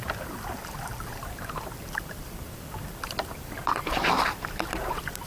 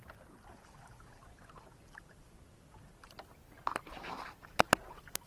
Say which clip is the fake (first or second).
first